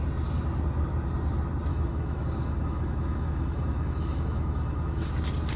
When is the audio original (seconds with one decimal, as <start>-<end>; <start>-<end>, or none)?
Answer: 0.0-1.7; 5.1-5.6